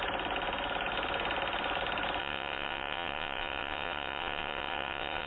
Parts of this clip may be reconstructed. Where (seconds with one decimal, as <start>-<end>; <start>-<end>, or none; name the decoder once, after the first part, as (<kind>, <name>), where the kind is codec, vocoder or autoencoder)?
2.2-5.3 (vocoder, WaveNeXt)